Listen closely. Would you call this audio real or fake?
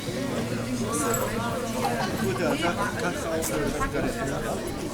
real